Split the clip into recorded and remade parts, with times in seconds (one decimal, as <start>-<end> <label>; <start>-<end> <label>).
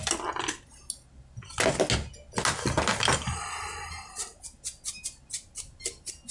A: 0.0-0.7 remade; 0.7-2.9 recorded; 2.9-3.7 remade; 3.7-6.3 recorded